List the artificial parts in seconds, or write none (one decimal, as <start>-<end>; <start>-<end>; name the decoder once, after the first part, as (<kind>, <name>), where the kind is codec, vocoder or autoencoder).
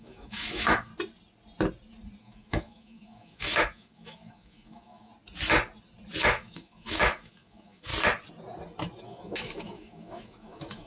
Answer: 0.0-0.9 (autoencoder, DAC-VAE); 2.2-5.1; 6.2-7.9; 9.0-10.9